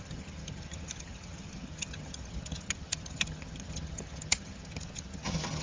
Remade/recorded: remade